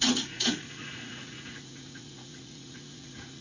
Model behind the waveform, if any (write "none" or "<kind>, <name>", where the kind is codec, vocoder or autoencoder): vocoder, Vocos